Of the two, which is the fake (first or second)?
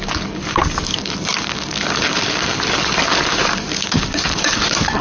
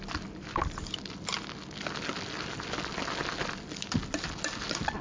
first